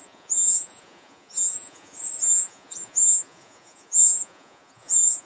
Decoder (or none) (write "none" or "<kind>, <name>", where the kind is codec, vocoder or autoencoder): vocoder, Vocos